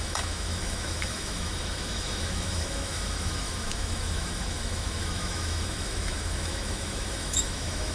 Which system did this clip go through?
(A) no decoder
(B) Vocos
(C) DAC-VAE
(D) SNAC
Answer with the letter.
C